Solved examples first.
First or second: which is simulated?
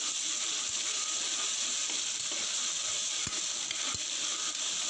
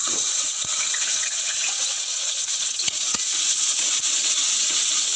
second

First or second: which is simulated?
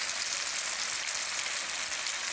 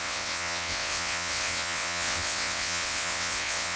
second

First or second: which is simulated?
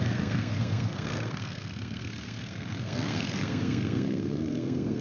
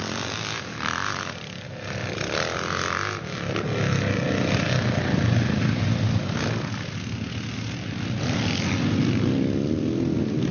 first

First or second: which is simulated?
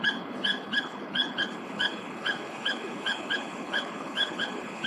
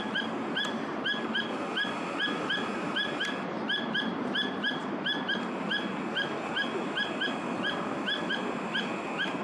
first